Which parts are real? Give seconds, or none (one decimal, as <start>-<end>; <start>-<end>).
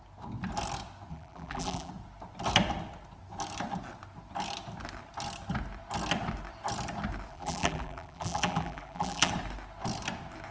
0.0-1.1; 1.9-7.3; 9.3-10.5